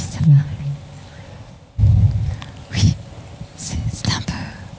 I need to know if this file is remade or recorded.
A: recorded